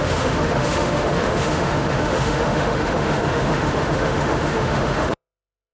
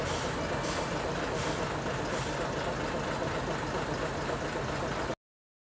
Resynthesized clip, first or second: first